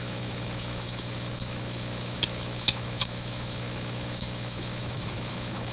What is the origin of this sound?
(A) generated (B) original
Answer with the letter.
A